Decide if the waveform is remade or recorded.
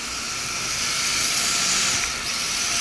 recorded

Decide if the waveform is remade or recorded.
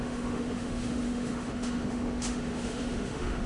remade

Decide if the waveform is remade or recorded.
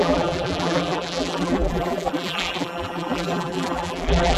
remade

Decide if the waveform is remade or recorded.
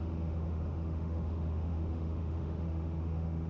remade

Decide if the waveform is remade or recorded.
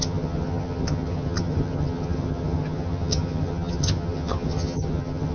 remade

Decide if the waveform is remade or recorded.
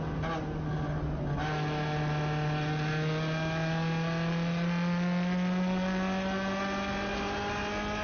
recorded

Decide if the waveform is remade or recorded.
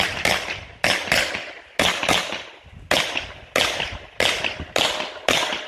recorded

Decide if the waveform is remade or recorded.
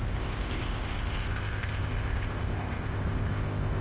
remade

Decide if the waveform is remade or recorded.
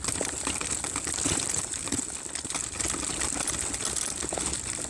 recorded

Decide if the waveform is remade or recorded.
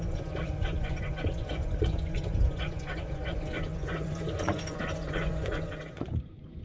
remade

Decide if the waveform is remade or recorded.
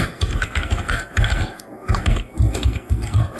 remade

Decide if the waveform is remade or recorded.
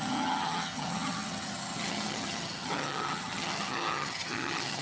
remade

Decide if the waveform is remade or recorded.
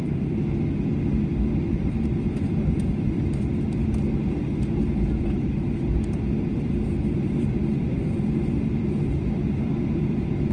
remade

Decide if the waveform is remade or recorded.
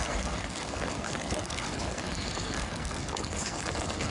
remade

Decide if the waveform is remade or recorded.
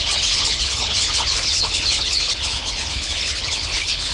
remade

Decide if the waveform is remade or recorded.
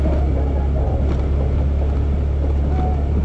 recorded